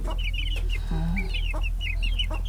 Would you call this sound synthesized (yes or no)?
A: no